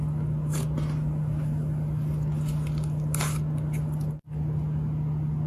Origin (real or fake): real